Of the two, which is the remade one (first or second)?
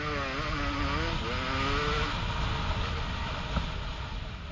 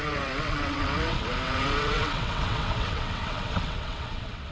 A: second